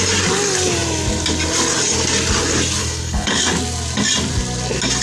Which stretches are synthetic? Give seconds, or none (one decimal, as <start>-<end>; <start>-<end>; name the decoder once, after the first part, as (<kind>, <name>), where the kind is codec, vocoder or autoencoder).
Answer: 2.8-3.4 (codec, HILCodec)